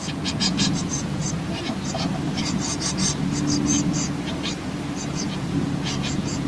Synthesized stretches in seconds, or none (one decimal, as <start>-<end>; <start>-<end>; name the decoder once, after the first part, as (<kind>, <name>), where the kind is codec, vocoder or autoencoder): 0.0-1.2 (vocoder, Vocos); 5.1-6.5